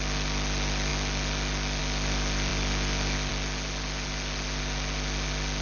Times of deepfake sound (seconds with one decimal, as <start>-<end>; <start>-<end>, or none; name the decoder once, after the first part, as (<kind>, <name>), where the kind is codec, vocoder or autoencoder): none